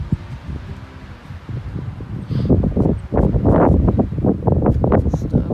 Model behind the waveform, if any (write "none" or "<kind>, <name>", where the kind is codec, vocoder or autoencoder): none